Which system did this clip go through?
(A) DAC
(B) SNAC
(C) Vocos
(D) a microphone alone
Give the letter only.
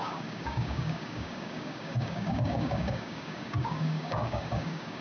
A